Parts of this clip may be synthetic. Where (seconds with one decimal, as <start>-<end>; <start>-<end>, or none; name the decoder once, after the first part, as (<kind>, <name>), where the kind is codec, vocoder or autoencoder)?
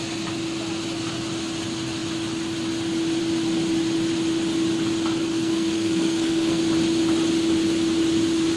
5.3-6.6 (codec, SNAC)